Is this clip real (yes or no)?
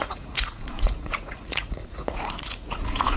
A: no